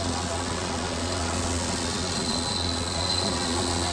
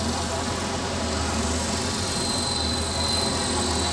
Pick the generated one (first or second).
first